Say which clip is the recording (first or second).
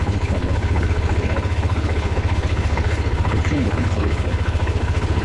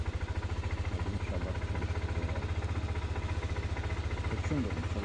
second